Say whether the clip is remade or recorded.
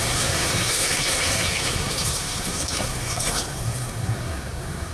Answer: remade